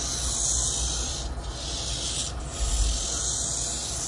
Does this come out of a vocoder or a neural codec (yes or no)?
no